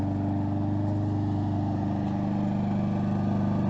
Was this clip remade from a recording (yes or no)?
no